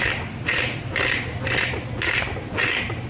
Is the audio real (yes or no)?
yes